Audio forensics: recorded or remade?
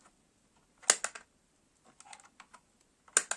recorded